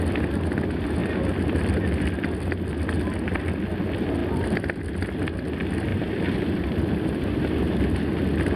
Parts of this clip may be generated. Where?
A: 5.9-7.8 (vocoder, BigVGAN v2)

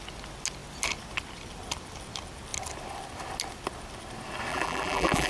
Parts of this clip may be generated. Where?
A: 4.5-5.3 (vocoder, BigVGAN v2)

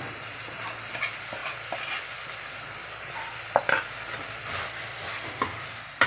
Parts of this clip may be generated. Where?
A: 1.4-5.1 (vocoder, BigVGAN v2)

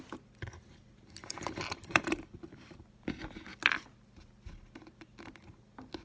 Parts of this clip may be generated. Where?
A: 1.2-2.8 (vocoder, BigVGAN v2)

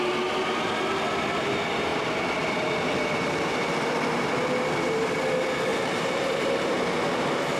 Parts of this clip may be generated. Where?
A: 5.7-6.7 (vocoder, BigVGAN v2)

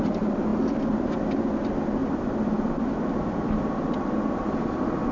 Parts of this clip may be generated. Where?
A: none

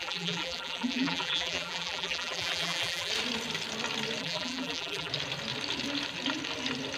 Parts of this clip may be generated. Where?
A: 0.0-3.1 (vocoder, BigVGAN v2); 4.2-5.1

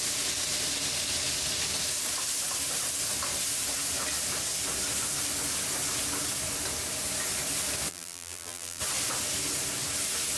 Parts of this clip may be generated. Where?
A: 7.9-8.8 (vocoder, BigVGAN v2)